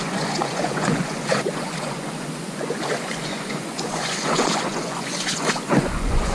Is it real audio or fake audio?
fake